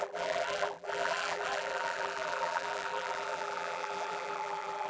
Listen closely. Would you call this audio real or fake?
fake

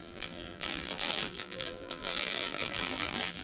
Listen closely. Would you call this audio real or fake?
fake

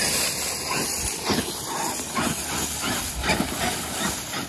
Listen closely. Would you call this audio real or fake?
real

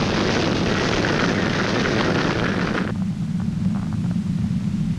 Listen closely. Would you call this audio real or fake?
real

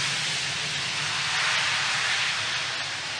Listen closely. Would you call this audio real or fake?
real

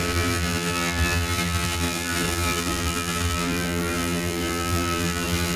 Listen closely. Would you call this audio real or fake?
fake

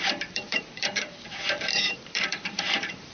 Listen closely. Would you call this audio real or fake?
fake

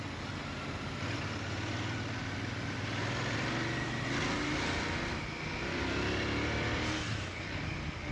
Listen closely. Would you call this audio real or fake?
real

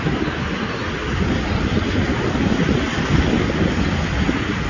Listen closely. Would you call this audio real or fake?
real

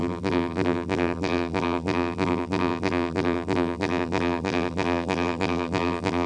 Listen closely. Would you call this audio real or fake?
fake